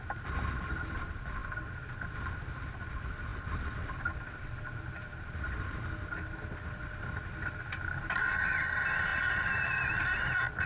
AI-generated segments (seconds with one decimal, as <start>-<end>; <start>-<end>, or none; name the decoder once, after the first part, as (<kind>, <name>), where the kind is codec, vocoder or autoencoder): none